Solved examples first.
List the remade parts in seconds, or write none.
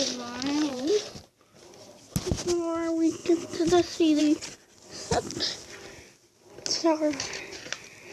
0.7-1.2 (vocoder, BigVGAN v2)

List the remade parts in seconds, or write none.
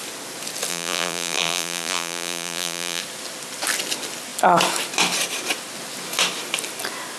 0.7-3.0 (vocoder, BigVGAN v2)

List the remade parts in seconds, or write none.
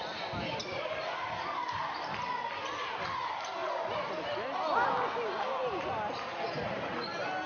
0.6-2.3 (vocoder, BigVGAN v2); 3.6-4.1; 5.6-6.9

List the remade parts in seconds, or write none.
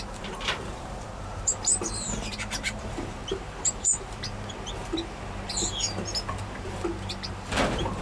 0.0-8.0 (vocoder, BigVGAN v2)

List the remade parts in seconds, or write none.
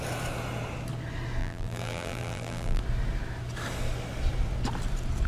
1.4-2.8 (vocoder, BigVGAN v2)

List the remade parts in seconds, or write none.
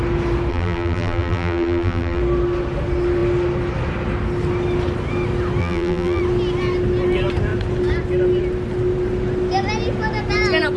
0.5-2.2 (vocoder, BigVGAN v2); 5.6-6.2